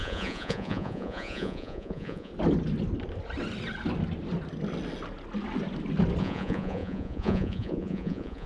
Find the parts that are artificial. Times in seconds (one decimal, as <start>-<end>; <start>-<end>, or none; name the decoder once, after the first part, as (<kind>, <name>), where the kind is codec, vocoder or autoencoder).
0.0-2.3 (vocoder, Vocos); 6.2-8.5

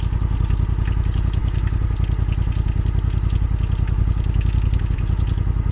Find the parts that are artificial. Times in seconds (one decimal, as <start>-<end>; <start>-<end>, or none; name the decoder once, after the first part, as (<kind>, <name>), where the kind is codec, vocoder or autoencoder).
none

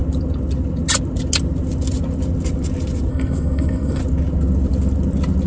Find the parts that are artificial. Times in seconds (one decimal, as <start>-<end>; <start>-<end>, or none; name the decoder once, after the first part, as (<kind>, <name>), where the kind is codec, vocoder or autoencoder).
3.1-4.0 (codec, SNAC)

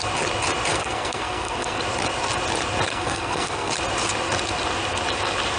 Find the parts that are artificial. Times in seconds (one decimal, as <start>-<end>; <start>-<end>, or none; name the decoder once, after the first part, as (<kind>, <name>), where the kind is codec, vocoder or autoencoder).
0.7-1.8 (codec, SNAC); 2.9-3.7